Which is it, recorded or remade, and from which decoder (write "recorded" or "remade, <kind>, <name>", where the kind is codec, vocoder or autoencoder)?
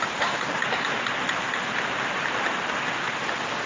recorded